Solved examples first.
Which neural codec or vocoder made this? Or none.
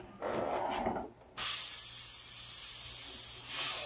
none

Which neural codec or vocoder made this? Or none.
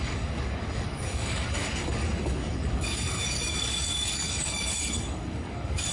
codec, DAC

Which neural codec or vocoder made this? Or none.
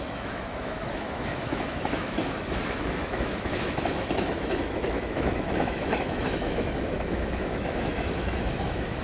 autoencoder, DAC-VAE